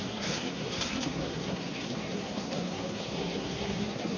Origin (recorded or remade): remade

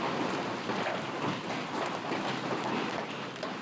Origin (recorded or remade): recorded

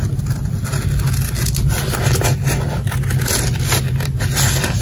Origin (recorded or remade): recorded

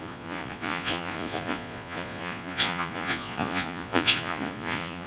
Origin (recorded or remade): remade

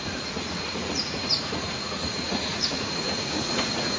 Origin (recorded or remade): remade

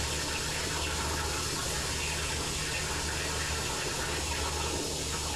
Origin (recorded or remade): recorded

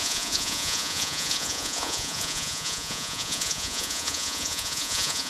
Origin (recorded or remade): remade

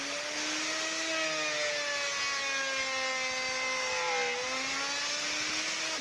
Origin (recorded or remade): recorded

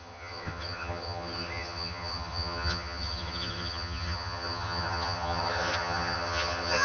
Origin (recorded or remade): remade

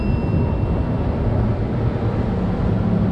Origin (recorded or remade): recorded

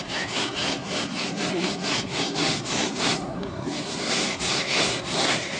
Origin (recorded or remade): remade